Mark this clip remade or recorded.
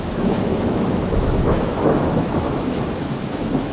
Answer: remade